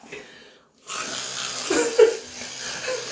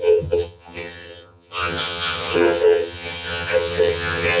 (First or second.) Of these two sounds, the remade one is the second